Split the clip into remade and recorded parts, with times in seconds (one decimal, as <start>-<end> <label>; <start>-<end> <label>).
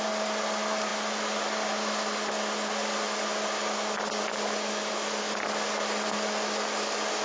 0.0-7.2 recorded